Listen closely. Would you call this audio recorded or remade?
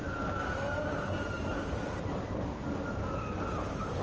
recorded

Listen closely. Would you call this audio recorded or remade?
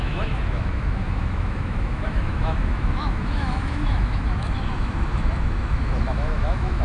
remade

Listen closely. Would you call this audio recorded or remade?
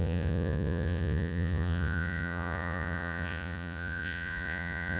remade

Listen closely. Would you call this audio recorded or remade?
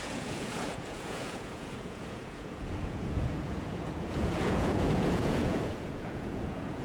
remade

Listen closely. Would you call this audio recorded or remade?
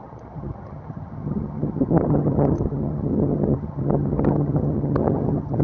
remade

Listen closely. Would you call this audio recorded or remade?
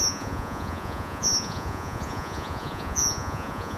remade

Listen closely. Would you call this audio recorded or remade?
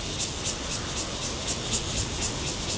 recorded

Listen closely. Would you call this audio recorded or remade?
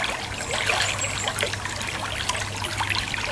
recorded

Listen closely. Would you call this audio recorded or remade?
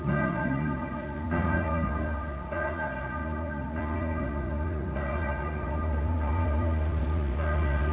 remade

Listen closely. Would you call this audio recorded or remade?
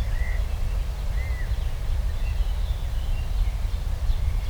recorded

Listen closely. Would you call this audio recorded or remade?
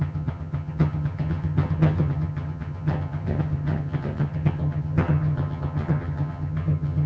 remade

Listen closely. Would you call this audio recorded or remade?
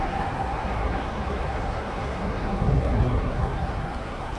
remade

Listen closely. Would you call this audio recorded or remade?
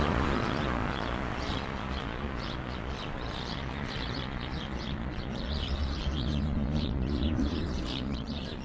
remade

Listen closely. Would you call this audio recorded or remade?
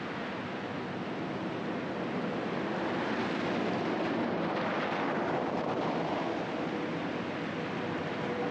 recorded